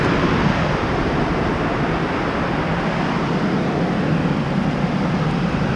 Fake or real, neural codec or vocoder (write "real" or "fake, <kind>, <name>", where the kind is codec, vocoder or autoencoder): real